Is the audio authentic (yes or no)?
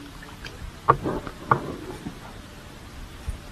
yes